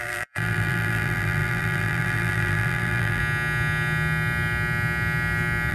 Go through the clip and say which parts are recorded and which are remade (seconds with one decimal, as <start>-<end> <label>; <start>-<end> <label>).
0.0-3.2 remade; 3.2-5.7 recorded